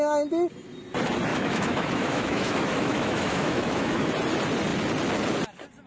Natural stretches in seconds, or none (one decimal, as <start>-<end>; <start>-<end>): 0.0-1.3; 4.1-5.9